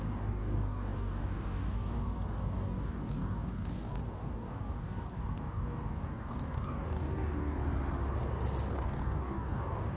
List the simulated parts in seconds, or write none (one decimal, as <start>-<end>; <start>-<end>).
0.0-7.6; 8.7-10.0